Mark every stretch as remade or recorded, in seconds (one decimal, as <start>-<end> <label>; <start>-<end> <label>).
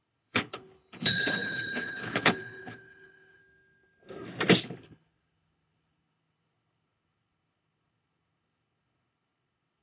0.0-3.4 remade; 3.4-4.6 recorded; 4.6-9.8 remade